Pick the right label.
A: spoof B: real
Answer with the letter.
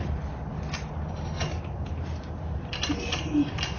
B